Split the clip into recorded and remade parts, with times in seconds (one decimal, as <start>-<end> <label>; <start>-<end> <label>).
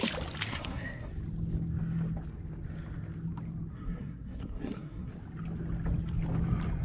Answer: 0.0-0.5 recorded; 0.5-1.1 remade; 1.1-3.7 recorded; 3.7-5.1 remade; 5.1-6.8 recorded